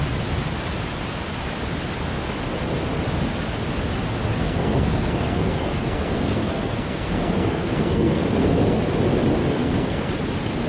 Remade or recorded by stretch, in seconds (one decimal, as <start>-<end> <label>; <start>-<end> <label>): 0.0-4.4 recorded; 4.4-8.8 remade; 8.8-9.4 recorded; 9.4-10.1 remade; 10.1-10.7 recorded